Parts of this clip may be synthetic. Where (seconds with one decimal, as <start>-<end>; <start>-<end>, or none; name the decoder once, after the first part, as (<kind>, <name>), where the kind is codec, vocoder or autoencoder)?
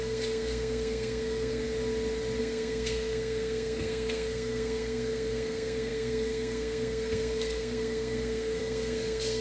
0.0-1.6 (codec, SNAC); 2.4-9.4